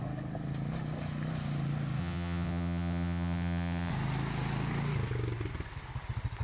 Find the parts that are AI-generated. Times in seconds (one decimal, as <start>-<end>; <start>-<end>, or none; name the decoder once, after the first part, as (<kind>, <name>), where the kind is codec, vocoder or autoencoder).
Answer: 2.0-3.9 (vocoder, WaveNeXt)